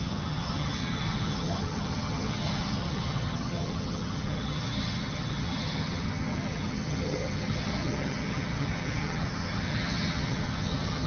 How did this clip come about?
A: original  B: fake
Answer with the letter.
B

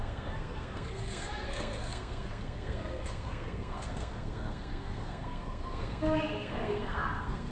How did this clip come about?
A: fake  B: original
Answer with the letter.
A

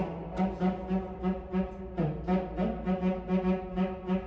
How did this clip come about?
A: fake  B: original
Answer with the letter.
B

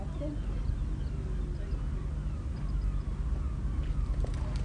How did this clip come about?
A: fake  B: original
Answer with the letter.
B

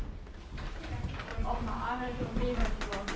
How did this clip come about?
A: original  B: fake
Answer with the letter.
A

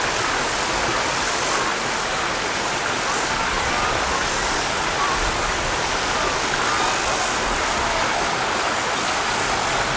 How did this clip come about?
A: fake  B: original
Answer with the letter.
B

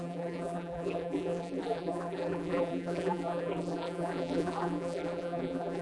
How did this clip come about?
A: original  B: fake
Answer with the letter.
B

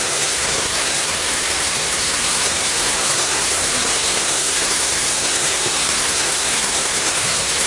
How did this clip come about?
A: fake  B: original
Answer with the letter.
A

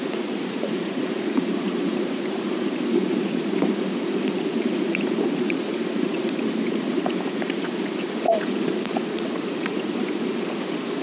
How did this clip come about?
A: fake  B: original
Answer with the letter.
A